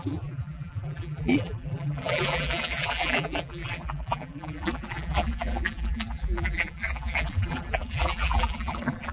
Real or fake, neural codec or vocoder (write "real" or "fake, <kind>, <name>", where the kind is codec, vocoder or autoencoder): fake, vocoder, BigVGAN v2